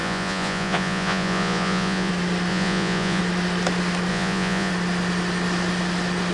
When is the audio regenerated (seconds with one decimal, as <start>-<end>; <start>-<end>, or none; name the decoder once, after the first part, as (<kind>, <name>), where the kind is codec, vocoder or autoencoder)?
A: 0.0-2.1 (vocoder, Vocos); 2.5-3.2; 4.1-4.7